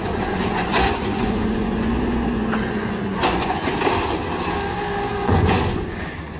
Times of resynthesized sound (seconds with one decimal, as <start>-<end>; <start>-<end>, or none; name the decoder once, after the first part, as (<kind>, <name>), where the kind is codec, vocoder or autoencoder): 0.0-3.7 (vocoder, Vocos); 5.1-6.4